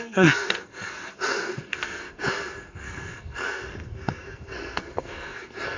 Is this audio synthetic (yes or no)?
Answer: yes